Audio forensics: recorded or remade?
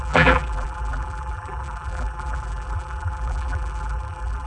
remade